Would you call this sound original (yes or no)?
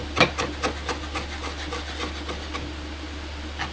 yes